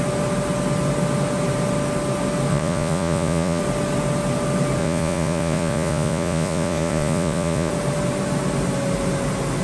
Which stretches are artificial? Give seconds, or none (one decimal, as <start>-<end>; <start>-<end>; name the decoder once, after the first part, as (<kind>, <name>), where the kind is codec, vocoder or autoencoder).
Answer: 2.5-3.6 (vocoder, Vocos); 4.8-7.7